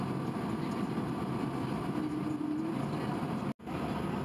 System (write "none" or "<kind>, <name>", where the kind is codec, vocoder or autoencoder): none